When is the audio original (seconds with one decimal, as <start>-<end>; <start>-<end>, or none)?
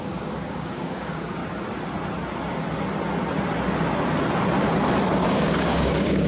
1.4-5.2